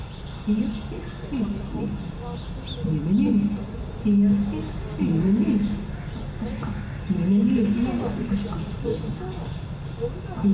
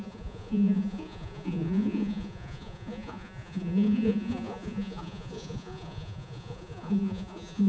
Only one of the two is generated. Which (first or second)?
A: second